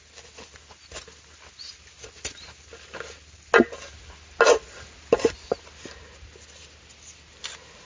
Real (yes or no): yes